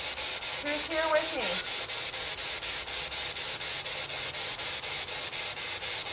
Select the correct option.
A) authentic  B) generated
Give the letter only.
A